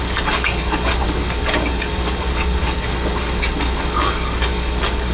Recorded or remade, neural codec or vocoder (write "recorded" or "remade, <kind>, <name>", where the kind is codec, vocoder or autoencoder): remade, codec, DAC